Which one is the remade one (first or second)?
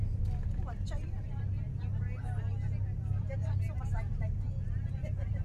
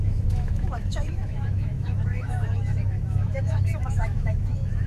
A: second